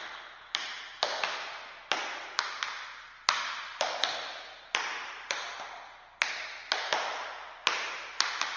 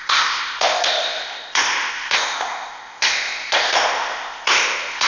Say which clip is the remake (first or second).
second